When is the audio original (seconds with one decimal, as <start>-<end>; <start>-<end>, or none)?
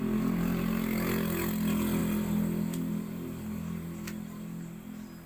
0.0-5.3